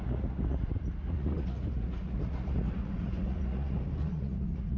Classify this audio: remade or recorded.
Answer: remade